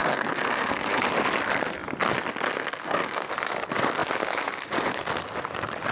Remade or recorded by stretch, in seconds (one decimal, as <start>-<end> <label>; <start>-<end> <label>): 0.0-1.1 remade; 1.1-2.6 recorded; 2.6-3.3 remade; 3.3-5.9 recorded